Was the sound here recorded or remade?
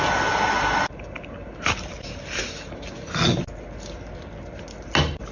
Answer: recorded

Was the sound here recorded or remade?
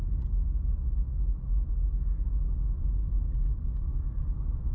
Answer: recorded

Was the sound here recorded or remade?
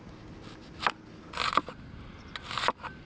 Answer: recorded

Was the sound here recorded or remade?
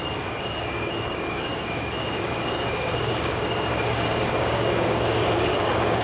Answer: remade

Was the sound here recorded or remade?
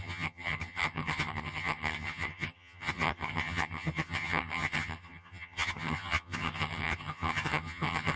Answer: remade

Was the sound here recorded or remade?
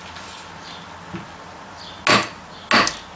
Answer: recorded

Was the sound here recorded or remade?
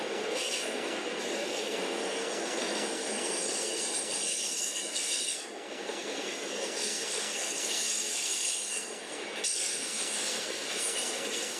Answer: remade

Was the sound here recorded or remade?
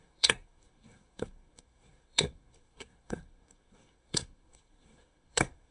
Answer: remade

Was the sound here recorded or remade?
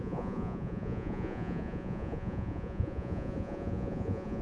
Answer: remade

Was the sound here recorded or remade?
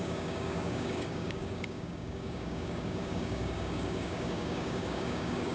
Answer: remade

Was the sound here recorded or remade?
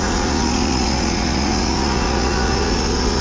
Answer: remade